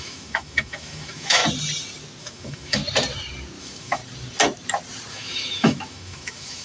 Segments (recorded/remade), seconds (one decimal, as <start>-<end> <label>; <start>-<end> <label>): 0.0-1.4 remade; 1.4-2.2 recorded; 2.2-2.8 remade; 2.8-3.6 recorded; 3.6-4.0 remade; 4.0-5.1 recorded; 5.1-6.6 remade